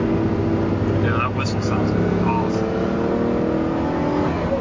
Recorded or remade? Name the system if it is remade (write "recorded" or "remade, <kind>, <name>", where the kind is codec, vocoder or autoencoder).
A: recorded